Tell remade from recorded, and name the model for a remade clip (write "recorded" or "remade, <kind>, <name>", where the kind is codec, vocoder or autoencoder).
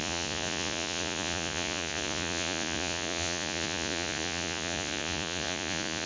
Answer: remade, vocoder, Vocos